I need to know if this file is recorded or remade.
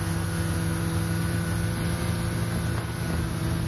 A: recorded